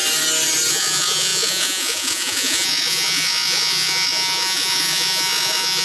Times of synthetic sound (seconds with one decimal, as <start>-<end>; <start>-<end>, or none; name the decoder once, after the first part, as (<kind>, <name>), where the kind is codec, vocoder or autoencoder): 0.7-5.8 (vocoder, Vocos)